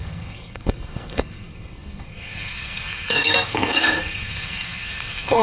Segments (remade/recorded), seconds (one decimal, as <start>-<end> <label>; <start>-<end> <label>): 0.0-5.4 remade